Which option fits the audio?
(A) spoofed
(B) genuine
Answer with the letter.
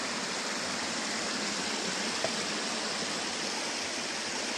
B